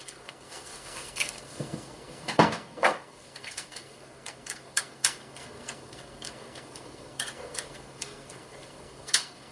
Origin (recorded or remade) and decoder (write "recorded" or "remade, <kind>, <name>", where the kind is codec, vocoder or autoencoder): remade, codec, SNAC